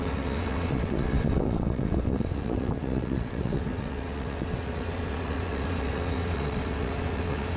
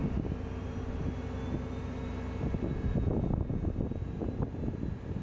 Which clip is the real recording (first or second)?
second